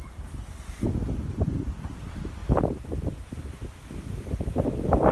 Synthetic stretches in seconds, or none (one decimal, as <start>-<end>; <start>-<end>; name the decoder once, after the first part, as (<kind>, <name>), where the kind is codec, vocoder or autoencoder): none

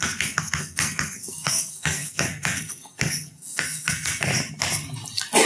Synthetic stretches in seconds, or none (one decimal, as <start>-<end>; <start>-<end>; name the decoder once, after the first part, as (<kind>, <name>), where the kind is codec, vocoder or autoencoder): 0.0-4.3 (codec, SNAC)

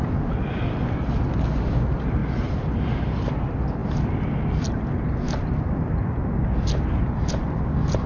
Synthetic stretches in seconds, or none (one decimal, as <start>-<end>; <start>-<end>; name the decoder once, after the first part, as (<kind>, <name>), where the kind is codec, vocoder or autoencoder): none

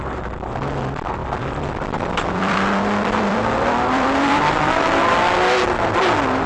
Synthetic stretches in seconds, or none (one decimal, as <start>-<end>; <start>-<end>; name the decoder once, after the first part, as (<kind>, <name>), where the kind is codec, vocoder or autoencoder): 1.2-5.0 (vocoder, BigVGAN v2)

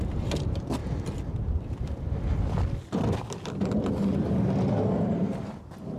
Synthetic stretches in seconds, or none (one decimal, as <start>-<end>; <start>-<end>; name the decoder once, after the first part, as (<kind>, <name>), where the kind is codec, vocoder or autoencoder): none

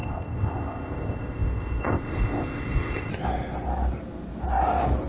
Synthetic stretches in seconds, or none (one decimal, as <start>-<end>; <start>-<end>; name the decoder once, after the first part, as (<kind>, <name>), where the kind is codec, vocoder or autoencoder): 0.0-3.1 (codec, ZipCodec)

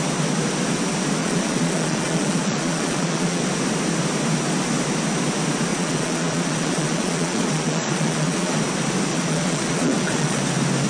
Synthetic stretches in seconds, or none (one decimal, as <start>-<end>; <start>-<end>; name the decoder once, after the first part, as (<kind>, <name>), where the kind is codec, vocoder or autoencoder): 1.2-3.4 (vocoder, Vocos); 5.7-8.6; 9.1-10.4